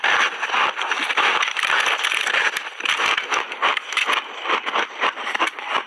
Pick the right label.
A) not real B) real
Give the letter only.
B